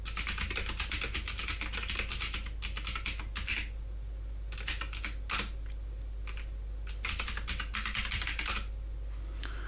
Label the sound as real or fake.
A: real